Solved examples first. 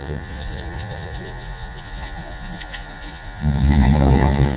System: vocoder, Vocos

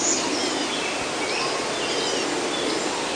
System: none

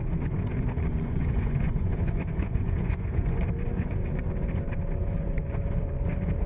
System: vocoder, Vocos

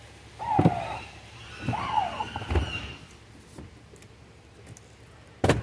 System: none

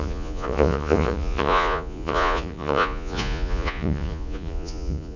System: vocoder, Vocos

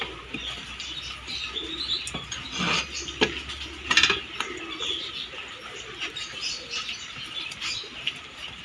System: none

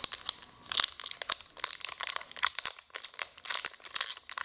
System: none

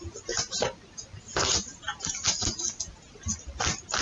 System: none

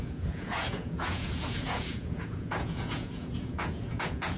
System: vocoder, Vocos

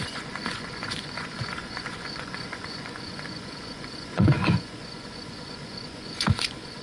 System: vocoder, Vocos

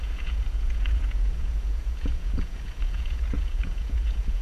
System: vocoder, Vocos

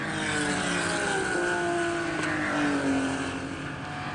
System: none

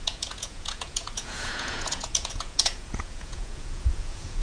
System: vocoder, Vocos